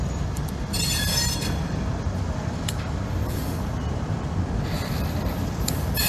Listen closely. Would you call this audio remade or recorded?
remade